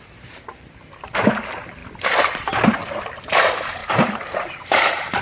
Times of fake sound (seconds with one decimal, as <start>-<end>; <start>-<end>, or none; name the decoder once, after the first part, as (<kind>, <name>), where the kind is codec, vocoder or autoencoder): 0.0-1.8 (vocoder, BigVGAN v2); 2.3-2.8; 3.3-5.2